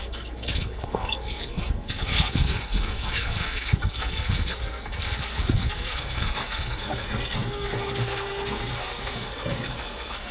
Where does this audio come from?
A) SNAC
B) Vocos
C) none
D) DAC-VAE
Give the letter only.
A